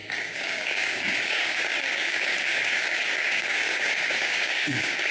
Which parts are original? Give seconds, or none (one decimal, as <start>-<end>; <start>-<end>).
none